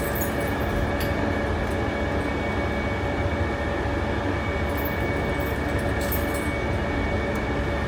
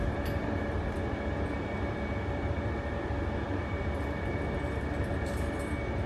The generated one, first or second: second